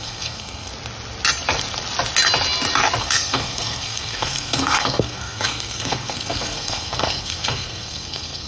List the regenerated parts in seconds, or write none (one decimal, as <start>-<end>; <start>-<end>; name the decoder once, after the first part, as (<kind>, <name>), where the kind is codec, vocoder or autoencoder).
0.0-0.7 (codec, SNAC); 3.0-8.5